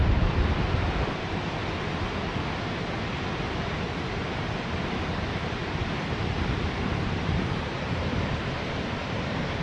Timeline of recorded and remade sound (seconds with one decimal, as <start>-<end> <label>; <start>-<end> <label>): 0.0-1.6 remade; 1.6-3.5 recorded; 3.5-9.6 remade